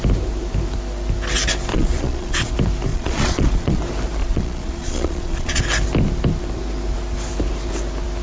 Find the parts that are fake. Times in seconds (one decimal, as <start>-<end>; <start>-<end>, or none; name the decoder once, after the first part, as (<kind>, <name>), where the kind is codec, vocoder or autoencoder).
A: 1.7-2.5 (vocoder, Vocos); 2.9-3.8; 4.2-5.6